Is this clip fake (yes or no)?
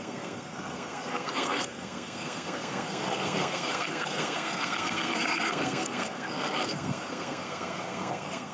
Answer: yes